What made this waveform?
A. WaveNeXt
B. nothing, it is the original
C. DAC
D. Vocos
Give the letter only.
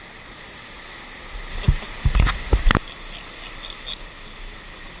B